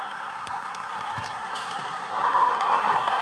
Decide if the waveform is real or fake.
fake